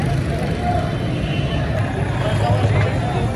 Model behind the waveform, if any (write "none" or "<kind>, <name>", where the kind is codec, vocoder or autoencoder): none